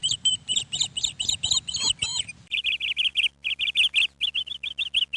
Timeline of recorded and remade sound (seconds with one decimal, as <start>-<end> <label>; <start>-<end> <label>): 0.0-0.8 remade; 0.8-2.1 recorded; 2.1-2.6 remade; 2.6-5.2 recorded